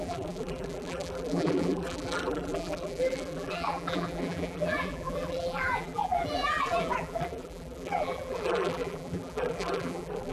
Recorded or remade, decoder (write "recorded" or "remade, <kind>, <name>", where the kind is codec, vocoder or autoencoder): remade, vocoder, BigVGAN v2